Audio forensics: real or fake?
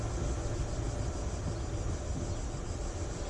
real